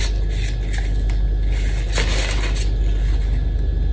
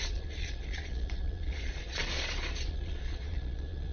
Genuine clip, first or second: first